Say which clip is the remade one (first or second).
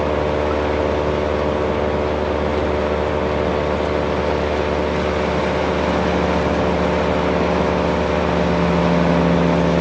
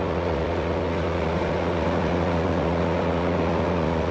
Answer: second